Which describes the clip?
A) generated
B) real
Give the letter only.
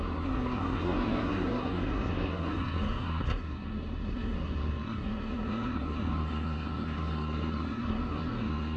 A